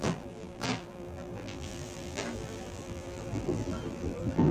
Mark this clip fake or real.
fake